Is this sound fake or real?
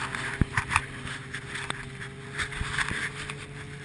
real